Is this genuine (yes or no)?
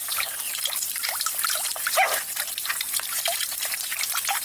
yes